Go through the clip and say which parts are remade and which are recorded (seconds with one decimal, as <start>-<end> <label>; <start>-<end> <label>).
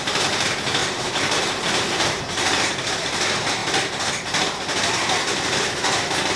0.0-0.8 recorded; 0.8-2.2 remade; 2.2-6.4 recorded